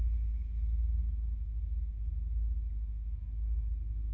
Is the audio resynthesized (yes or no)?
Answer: no